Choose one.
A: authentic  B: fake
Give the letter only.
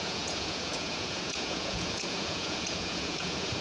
B